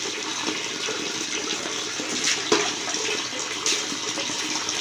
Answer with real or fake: fake